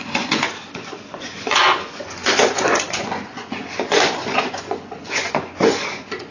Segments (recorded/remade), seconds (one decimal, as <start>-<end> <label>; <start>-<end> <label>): 0.0-6.3 remade